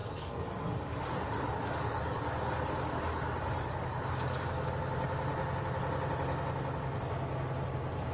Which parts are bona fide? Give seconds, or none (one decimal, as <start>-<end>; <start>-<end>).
4.7-8.1